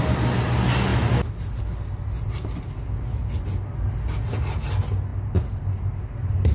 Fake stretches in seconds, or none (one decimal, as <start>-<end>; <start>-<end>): none